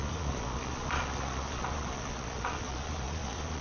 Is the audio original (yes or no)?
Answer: no